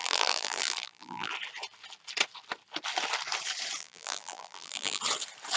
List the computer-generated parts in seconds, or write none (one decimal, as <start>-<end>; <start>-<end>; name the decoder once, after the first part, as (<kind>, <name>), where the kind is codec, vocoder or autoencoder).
0.0-1.3 (vocoder, BigVGAN v2); 3.8-5.0

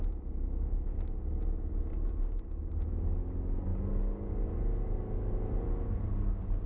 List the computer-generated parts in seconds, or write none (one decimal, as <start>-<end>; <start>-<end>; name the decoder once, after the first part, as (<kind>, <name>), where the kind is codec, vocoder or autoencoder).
none

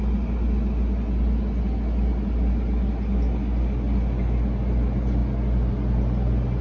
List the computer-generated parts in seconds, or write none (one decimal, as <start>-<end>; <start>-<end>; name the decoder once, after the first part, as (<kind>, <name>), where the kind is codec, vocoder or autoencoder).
none

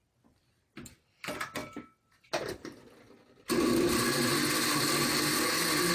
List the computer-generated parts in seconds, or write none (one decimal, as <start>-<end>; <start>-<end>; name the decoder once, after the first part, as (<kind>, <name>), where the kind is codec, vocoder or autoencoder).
none

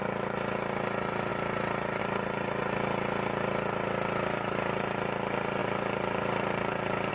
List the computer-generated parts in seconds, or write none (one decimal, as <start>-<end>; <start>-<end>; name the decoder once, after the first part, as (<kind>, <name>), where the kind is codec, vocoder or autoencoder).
5.6-7.1 (vocoder, BigVGAN v2)

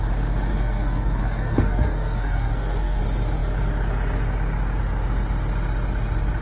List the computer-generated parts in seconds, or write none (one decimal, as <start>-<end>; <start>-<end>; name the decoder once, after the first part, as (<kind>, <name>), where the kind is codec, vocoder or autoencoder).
0.5-3.0 (codec, SNAC)

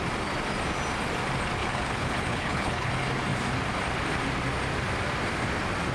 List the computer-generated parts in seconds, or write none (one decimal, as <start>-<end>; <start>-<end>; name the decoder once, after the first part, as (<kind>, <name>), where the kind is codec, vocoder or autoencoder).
1.6-2.9 (codec, HILCodec)